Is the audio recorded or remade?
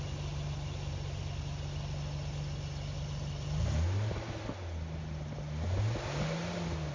recorded